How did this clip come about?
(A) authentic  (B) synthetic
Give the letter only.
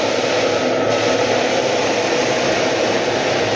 A